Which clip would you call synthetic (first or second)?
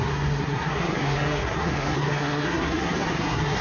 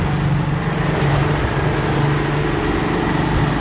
first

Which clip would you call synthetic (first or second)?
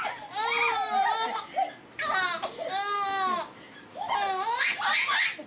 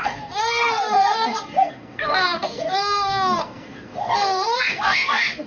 second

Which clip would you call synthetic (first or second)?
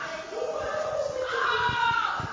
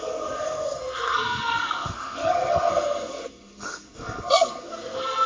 second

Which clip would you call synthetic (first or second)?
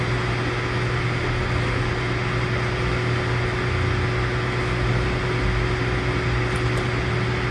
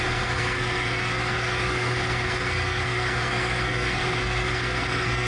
second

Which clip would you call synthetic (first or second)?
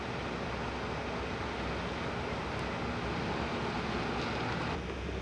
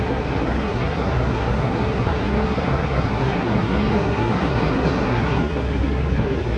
second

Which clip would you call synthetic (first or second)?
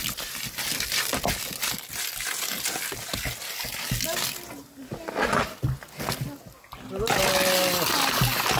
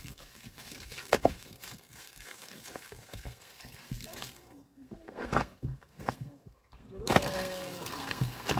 second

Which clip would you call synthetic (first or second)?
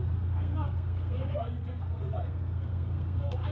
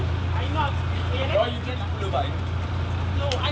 first